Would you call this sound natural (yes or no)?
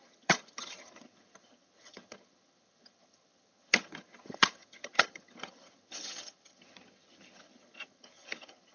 no